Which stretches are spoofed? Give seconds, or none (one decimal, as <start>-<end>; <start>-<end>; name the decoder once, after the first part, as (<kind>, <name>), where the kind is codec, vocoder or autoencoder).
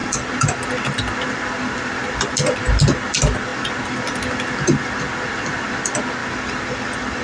0.0-2.3 (vocoder, BigVGAN v2); 3.5-5.8; 6.2-7.2